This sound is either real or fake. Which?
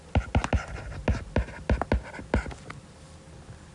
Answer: real